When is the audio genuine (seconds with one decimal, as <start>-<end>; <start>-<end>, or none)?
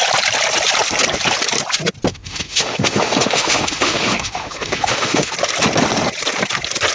0.0-2.1; 5.3-6.9